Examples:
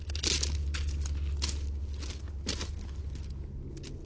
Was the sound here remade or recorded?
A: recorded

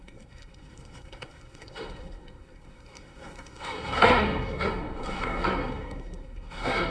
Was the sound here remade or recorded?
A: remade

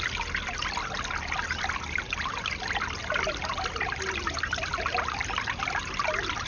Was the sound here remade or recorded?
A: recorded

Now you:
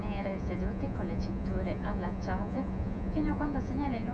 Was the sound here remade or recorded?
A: remade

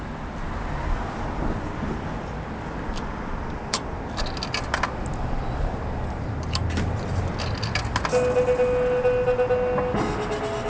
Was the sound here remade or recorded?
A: recorded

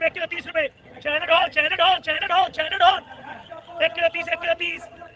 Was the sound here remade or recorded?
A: remade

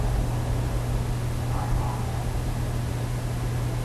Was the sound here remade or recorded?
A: recorded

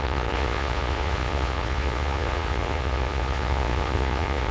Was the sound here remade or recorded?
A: remade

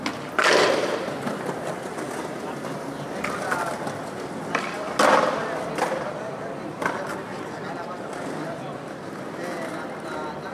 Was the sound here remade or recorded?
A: recorded